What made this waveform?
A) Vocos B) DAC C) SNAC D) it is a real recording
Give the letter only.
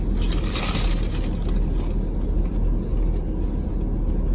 D